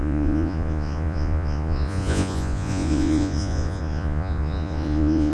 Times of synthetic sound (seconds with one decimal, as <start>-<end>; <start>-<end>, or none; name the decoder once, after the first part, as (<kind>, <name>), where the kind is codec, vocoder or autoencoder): 0.0-5.3 (vocoder, Vocos)